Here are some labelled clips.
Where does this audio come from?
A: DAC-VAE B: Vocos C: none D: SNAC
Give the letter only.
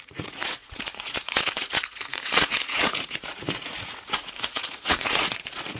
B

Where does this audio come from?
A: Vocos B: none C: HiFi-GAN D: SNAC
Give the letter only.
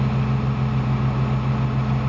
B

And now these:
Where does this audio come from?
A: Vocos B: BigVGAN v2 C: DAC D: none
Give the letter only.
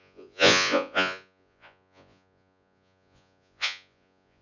A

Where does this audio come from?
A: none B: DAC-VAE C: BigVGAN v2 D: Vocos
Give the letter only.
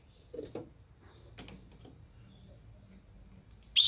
A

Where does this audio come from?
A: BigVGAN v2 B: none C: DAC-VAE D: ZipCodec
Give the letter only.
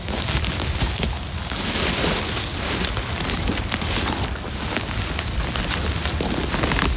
B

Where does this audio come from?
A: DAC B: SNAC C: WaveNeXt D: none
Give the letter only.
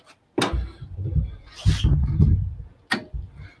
D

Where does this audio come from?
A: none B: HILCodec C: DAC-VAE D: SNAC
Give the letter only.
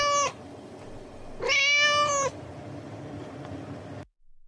A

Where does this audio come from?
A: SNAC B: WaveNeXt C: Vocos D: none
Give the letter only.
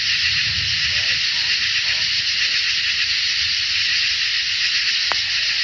D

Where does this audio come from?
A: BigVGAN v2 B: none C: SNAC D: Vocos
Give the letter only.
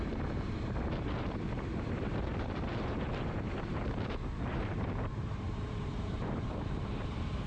A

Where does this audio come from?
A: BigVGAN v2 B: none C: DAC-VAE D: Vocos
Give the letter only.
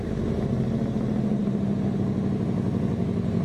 B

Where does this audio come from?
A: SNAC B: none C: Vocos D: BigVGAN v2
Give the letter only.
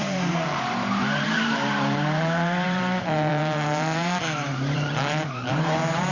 D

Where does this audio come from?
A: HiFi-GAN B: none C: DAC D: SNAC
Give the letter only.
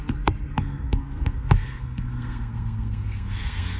D